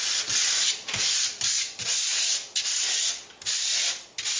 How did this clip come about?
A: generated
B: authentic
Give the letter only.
B